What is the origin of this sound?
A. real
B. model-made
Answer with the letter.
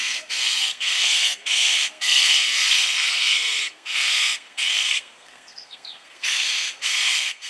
B